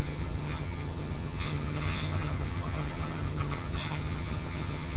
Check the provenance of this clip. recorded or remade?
remade